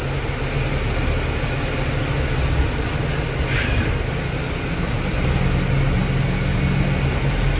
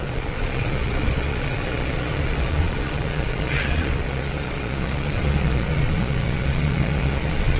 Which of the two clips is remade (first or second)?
second